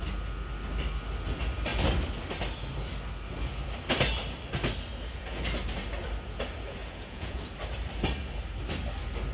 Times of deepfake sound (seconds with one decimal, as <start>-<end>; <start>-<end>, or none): 6.8-7.4